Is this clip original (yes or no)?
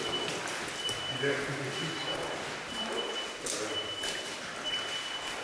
yes